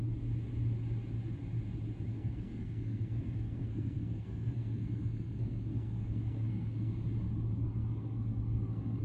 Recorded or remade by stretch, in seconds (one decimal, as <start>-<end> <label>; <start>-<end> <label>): 0.0-2.1 recorded; 2.1-7.0 remade; 7.0-7.6 recorded; 7.6-9.0 remade